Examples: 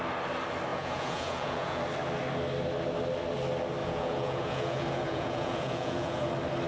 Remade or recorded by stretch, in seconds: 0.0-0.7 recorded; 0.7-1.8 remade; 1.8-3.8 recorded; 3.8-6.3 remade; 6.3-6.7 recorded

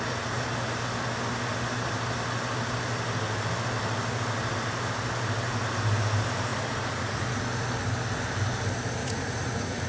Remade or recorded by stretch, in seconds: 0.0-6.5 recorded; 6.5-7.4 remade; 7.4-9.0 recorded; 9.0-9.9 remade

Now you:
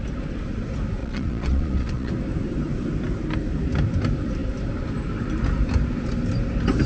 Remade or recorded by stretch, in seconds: 0.0-1.0 recorded; 1.0-2.1 remade; 2.1-6.9 recorded

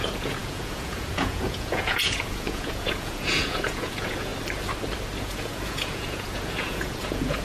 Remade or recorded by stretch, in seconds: 0.0-4.3 remade; 4.3-5.2 recorded; 5.2-7.4 remade